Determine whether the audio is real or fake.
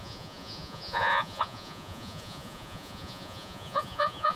fake